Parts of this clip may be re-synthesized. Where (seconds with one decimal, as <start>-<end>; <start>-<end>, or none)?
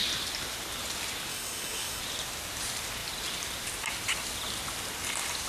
1.3-2.0